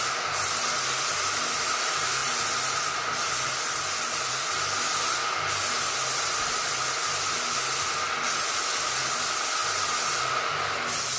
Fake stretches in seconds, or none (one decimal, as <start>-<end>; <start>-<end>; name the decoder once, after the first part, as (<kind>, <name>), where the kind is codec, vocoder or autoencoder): none